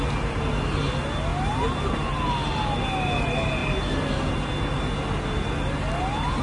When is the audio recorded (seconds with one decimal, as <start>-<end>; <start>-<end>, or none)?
0.0-6.4